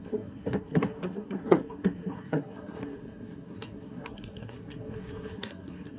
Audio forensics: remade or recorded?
remade